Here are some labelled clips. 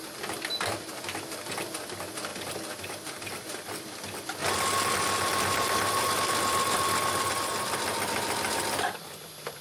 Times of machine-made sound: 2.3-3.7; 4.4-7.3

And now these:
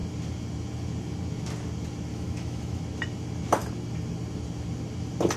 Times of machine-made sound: 2.1-2.8

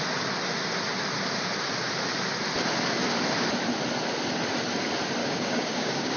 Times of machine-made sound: 5.2-6.2